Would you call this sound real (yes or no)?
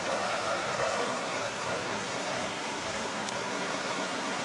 no